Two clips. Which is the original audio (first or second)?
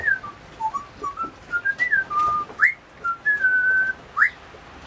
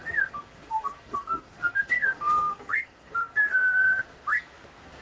first